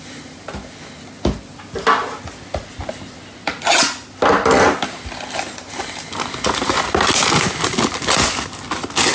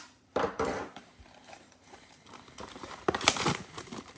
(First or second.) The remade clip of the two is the second